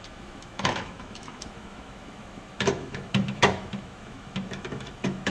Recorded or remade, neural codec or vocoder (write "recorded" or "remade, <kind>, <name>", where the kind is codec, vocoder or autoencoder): remade, autoencoder, DAC-VAE